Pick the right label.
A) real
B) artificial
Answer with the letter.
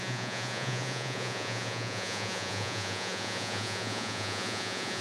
B